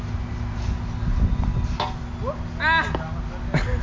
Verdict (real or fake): real